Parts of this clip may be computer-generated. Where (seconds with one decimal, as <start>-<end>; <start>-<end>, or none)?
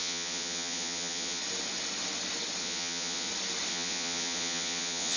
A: 0.0-1.4; 2.6-3.3; 3.7-5.2